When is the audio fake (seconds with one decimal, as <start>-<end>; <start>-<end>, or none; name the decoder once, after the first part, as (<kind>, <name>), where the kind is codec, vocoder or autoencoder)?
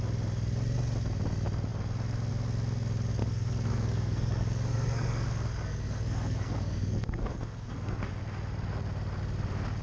3.2-8.1 (codec, SNAC)